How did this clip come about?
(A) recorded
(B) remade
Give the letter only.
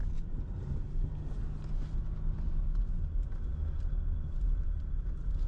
A